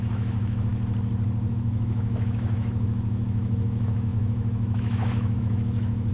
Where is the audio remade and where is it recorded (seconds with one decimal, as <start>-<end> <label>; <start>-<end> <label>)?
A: 0.0-0.7 remade; 0.7-1.5 recorded; 1.5-6.1 remade